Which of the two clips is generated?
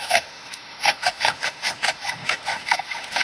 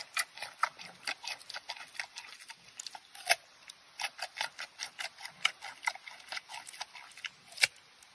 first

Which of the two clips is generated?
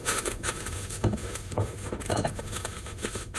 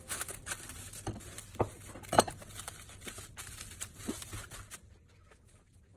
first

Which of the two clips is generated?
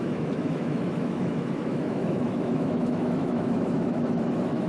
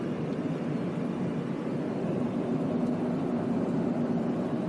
first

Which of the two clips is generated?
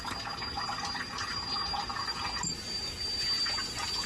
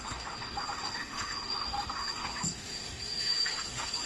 second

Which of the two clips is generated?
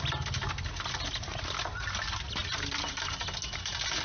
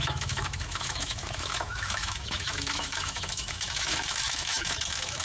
second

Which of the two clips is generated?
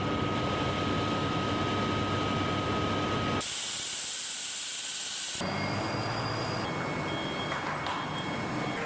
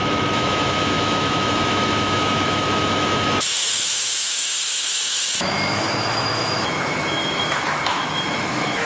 second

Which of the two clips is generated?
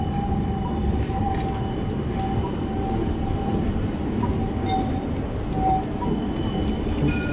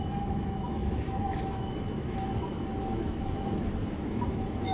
second